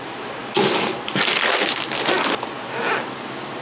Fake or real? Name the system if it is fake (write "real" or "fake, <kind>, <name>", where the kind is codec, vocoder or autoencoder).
real